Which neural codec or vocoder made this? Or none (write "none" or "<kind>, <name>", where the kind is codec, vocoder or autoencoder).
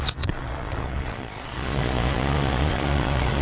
vocoder, Vocos